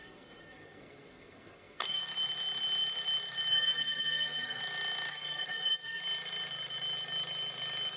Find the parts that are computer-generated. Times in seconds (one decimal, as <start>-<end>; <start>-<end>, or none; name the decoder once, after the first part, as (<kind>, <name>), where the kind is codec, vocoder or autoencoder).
0.0-2.0 (codec, SNAC); 3.5-4.6; 5.1-6.0